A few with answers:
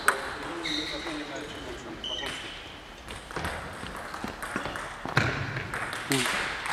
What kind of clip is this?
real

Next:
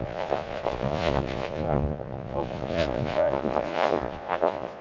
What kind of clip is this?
fake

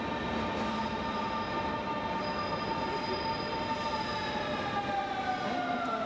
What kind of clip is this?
real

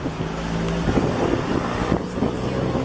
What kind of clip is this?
real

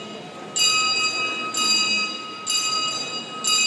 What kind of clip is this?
real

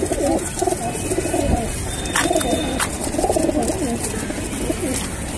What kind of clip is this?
real